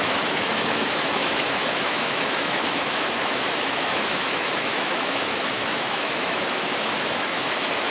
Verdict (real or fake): fake